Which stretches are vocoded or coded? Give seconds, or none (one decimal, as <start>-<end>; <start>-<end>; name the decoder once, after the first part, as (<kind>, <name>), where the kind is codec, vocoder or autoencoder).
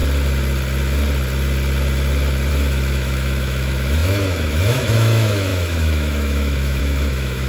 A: 2.5-7.5 (autoencoder, DAC-VAE)